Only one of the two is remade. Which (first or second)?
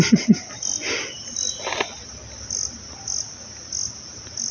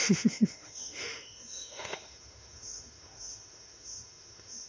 second